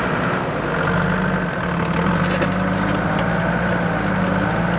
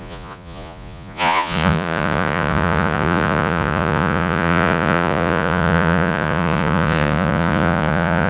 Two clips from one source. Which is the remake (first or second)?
second